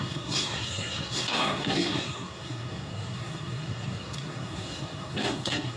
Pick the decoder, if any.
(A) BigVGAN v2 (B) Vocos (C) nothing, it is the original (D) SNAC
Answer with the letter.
D